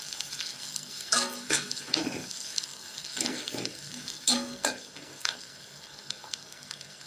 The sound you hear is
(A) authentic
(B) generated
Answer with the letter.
B